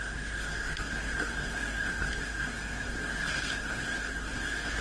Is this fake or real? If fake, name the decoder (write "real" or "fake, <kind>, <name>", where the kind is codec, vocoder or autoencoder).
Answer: fake, codec, SNAC